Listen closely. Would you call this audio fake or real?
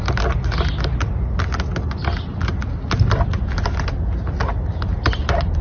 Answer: real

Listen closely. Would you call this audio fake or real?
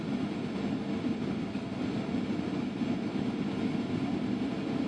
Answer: real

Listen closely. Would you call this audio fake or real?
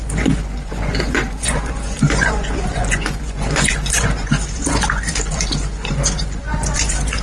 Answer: fake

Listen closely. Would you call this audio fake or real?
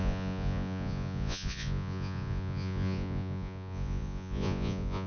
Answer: fake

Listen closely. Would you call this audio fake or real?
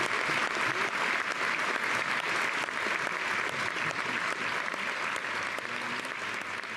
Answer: real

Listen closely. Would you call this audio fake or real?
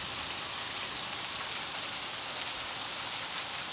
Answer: real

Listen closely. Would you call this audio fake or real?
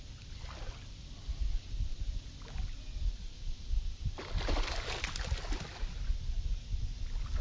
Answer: real